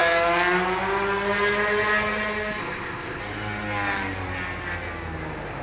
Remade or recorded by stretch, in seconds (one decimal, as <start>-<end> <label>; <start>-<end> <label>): 0.0-2.6 recorded; 2.6-3.2 remade; 3.2-5.6 recorded